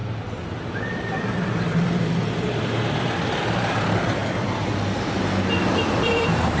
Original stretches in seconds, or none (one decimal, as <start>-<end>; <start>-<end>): 4.2-5.8